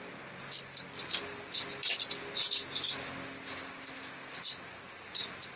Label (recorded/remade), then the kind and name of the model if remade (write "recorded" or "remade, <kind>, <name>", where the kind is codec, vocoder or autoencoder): recorded